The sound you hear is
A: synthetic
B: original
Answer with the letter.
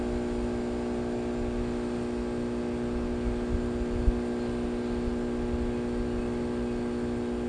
B